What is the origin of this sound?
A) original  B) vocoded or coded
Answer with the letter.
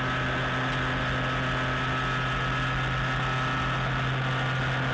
A